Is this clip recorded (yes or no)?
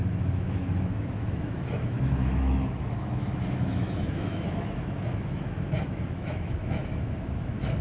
no